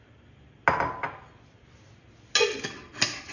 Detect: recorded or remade recorded